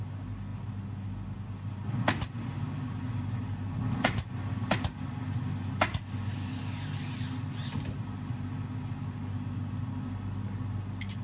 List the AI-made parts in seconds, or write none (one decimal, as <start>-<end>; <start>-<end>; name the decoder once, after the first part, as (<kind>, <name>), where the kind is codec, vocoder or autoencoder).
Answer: none